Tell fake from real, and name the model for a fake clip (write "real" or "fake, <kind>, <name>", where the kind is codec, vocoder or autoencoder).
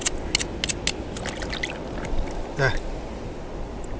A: real